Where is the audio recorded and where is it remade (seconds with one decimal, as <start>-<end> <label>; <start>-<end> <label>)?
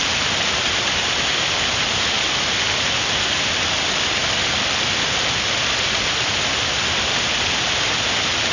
0.0-8.5 recorded